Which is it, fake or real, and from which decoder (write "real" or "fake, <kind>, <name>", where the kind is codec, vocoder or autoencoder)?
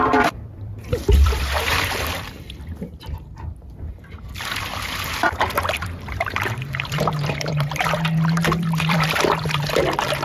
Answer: fake, vocoder, BigVGAN v2